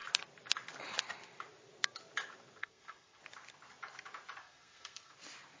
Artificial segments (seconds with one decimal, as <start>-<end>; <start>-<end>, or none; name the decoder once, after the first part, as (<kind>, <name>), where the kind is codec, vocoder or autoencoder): 2.6-3.2 (codec, SNAC); 4.4-5.1